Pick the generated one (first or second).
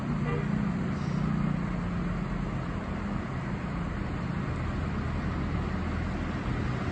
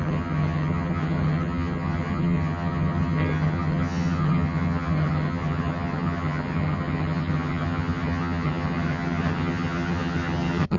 second